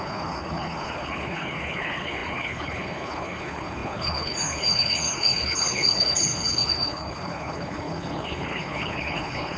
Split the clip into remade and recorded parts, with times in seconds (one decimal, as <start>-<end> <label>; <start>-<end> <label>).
0.0-9.6 remade

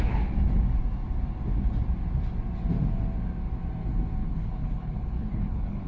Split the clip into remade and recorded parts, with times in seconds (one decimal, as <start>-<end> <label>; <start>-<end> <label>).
0.0-4.2 recorded; 4.2-5.9 remade

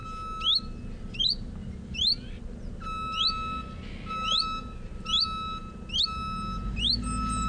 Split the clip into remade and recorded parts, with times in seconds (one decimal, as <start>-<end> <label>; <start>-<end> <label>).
0.0-7.5 recorded

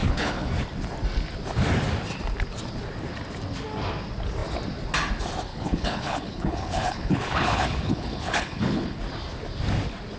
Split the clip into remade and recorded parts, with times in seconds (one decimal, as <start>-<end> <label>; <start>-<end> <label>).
0.0-0.5 remade; 0.5-5.5 recorded; 5.5-9.0 remade; 9.0-10.2 recorded

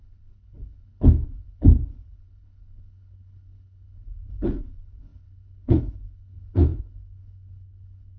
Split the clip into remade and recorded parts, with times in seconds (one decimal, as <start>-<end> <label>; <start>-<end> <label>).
0.0-8.2 remade

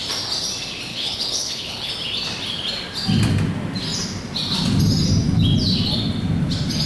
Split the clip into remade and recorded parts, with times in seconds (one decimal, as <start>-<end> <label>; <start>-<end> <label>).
0.0-0.9 recorded; 0.9-1.9 remade; 1.9-6.9 recorded

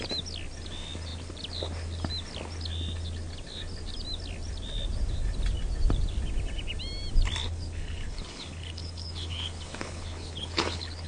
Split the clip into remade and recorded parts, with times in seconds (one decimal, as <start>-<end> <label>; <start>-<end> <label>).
0.0-7.4 recorded; 7.4-11.1 remade